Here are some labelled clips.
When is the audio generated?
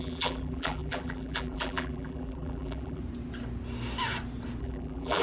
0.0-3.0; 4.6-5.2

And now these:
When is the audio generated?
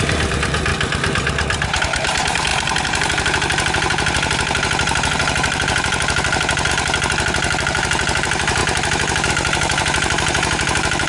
0.0-0.7; 1.8-11.1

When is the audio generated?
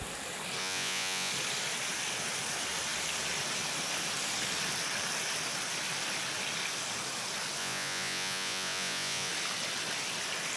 0.6-1.3; 7.6-9.3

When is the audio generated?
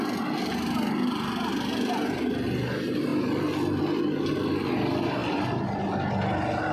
none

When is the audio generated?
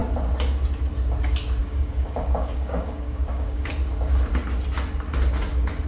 1.6-3.7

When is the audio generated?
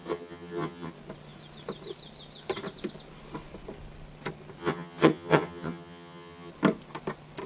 0.0-0.9; 4.6-6.5